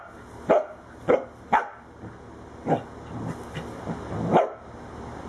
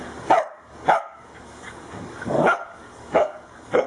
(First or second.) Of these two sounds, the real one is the first